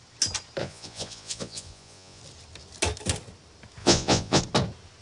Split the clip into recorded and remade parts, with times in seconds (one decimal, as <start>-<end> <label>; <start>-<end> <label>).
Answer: 0.0-0.6 recorded; 0.6-2.2 remade; 2.2-3.8 recorded; 3.8-4.4 remade; 4.4-5.0 recorded